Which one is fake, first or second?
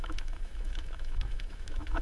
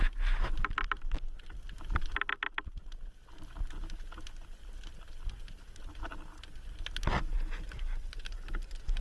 first